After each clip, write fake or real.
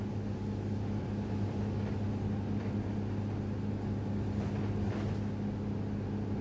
real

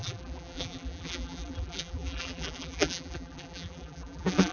fake